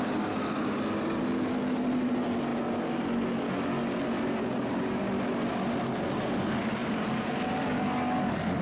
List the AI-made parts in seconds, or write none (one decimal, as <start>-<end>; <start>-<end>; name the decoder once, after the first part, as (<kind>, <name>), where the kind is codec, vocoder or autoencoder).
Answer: none